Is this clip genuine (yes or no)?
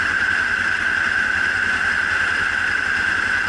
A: yes